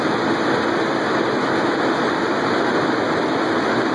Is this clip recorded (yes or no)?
yes